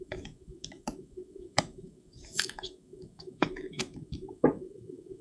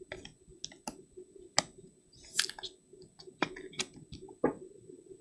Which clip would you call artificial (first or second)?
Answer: first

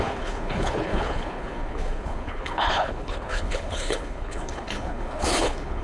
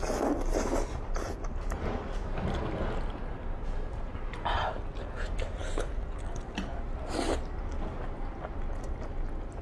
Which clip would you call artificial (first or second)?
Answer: first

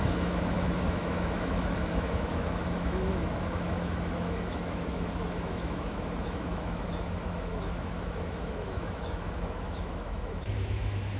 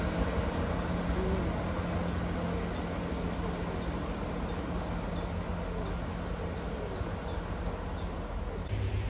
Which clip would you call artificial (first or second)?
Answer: first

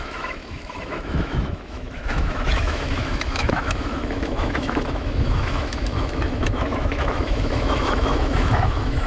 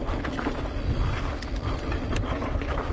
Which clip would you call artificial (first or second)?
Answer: first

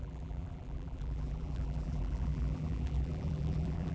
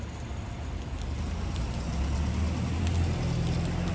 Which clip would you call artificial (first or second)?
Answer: first